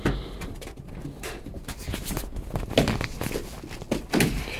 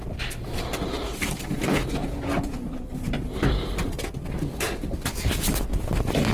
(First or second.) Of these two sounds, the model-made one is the second